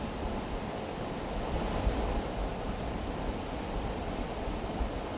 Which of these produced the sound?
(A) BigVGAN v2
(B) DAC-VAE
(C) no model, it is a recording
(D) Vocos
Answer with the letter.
C